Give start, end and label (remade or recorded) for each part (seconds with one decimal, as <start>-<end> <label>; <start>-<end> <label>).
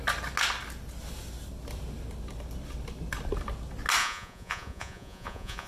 0.0-4.0 recorded; 4.0-5.7 remade